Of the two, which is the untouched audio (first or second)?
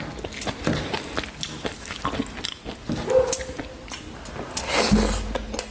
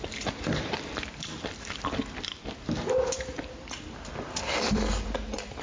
first